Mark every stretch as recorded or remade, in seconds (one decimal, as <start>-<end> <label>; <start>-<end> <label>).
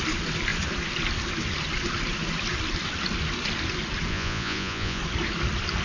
0.0-4.1 recorded; 4.1-5.0 remade; 5.0-5.8 recorded